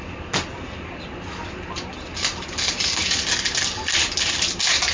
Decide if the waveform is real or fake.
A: real